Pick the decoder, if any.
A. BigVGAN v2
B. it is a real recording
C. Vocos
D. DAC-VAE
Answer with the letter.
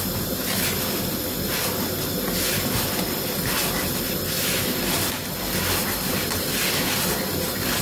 B